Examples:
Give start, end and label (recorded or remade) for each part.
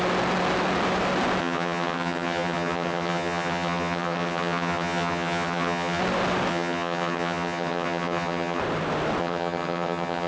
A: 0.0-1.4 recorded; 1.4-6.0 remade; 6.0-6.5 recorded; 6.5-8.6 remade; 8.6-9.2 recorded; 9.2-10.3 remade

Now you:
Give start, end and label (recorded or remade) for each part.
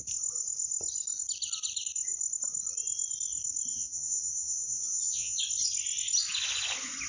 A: 0.0-3.7 recorded; 3.7-5.4 remade; 5.4-7.1 recorded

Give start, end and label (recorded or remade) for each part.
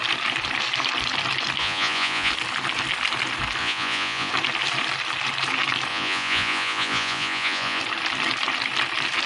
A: 0.0-1.6 recorded; 1.6-2.3 remade; 2.3-3.6 recorded; 3.6-4.3 remade; 4.3-5.9 recorded; 5.9-7.8 remade; 7.8-9.3 recorded